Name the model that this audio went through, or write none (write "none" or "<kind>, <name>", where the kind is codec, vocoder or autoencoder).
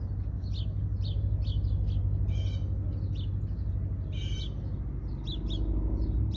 none